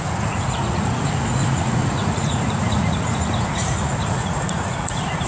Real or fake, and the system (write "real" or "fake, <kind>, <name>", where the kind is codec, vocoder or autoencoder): fake, vocoder, Vocos